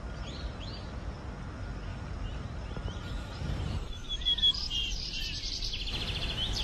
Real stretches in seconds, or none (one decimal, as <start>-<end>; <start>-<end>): 0.0-1.9; 5.5-6.6